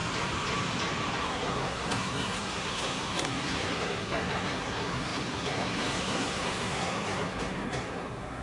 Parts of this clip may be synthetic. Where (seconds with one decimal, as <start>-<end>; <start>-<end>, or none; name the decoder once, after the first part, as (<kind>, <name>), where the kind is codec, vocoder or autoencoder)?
1.2-8.4 (codec, SNAC)

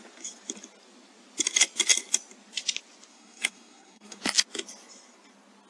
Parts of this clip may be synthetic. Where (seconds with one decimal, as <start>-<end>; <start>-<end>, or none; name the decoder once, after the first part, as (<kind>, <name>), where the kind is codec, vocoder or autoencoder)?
3.1-4.2 (codec, SNAC)